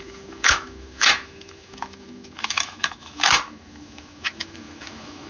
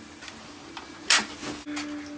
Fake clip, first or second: first